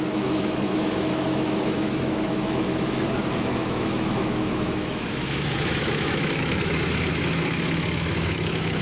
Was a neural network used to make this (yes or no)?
yes